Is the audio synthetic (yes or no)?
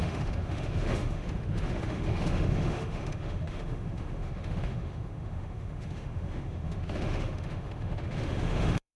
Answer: yes